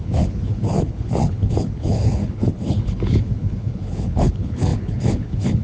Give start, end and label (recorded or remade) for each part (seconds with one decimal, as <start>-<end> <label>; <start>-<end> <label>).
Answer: 0.0-5.6 remade